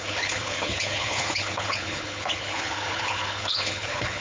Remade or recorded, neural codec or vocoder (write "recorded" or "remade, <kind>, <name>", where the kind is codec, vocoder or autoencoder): remade, codec, HILCodec